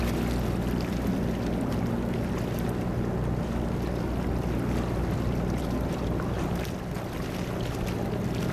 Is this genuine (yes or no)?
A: yes